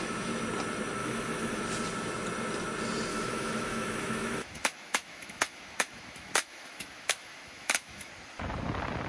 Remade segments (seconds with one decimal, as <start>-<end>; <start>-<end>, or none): 1.0-1.6; 3.1-8.1

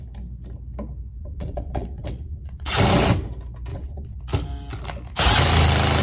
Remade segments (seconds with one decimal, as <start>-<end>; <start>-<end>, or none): 1.2-2.7; 3.7-4.2

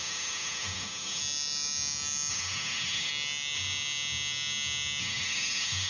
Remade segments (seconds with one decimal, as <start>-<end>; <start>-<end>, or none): 0.0-1.2; 2.3-3.1; 5.0-5.9

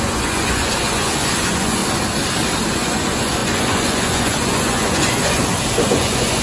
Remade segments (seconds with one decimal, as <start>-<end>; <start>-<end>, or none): 0.0-1.8; 2.7-5.4; 5.9-6.4

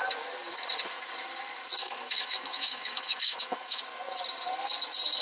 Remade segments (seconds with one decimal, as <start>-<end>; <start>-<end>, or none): 1.8-3.8

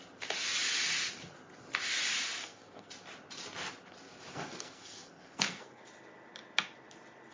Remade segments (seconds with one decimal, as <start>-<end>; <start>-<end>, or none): 2.4-2.9; 4.3-5.8